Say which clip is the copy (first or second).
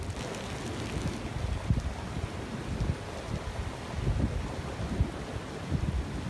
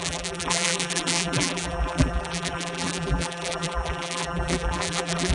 second